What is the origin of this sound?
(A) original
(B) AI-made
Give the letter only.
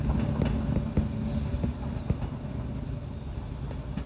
A